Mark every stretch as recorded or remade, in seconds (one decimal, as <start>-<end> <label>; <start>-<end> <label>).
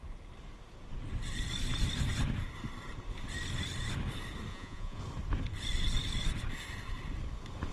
0.0-4.5 recorded; 4.5-5.0 remade; 5.0-7.7 recorded